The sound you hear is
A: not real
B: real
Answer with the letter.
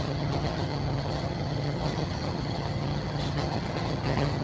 A